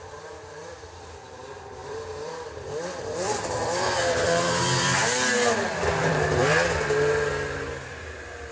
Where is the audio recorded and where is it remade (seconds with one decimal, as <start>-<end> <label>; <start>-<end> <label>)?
0.0-6.4 remade; 6.4-7.3 recorded; 7.3-8.5 remade